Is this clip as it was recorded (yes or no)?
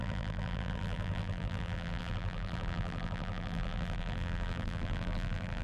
no